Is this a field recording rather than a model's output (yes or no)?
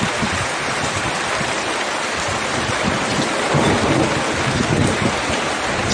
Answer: yes